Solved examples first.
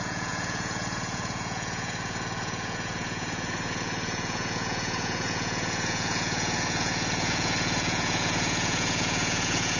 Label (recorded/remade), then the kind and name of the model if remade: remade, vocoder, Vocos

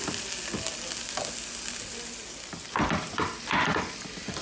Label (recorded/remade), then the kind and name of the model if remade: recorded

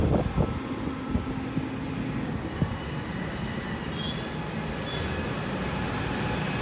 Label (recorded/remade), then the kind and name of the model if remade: recorded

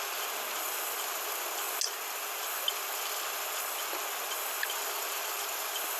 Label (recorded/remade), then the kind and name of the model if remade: recorded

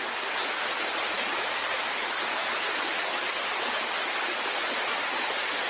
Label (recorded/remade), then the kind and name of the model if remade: recorded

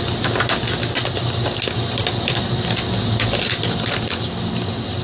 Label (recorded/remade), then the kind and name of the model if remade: recorded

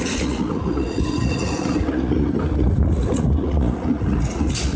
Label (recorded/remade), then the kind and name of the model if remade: remade, vocoder, Vocos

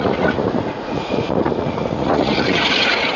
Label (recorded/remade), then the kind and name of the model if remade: remade, vocoder, Vocos